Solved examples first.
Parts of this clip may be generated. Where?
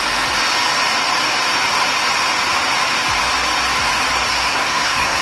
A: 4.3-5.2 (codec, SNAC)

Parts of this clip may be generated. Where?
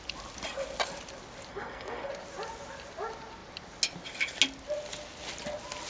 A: 1.5-2.1 (codec, SNAC)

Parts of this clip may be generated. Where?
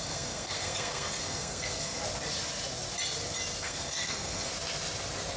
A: 0.0-2.0 (codec, SNAC); 3.6-4.5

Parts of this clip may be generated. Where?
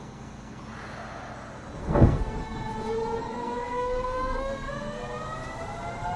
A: 0.0-0.6 (codec, SNAC); 1.8-2.7; 3.2-5.0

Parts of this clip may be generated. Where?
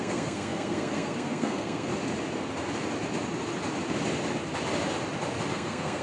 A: 0.0-1.9 (codec, SNAC); 5.5-6.0